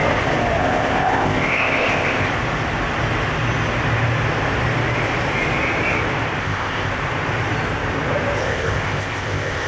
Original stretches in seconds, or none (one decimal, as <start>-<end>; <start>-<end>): 0.0-0.6; 2.3-6.4; 6.9-8.4